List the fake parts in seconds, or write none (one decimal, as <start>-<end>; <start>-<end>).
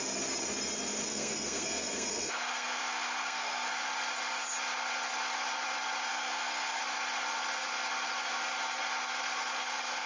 1.1-3.7; 6.1-6.8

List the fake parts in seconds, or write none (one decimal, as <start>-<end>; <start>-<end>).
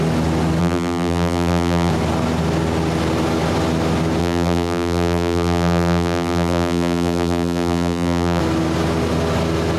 0.6-1.9; 4.2-8.4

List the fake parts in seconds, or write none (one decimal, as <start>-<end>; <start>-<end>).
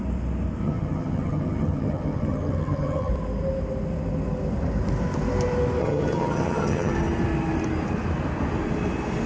0.6-3.1; 5.8-6.9